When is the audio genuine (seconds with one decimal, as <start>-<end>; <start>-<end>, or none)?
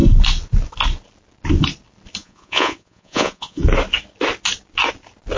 0.0-2.2; 3.6-5.4